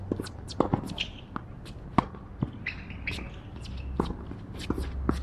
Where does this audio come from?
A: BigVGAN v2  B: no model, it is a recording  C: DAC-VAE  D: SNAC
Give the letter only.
B